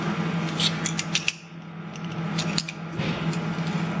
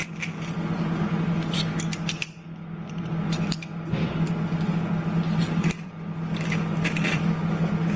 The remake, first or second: second